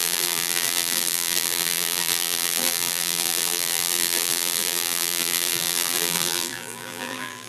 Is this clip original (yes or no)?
no